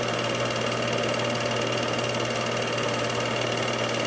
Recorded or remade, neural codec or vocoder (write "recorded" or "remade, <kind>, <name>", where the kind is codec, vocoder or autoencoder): recorded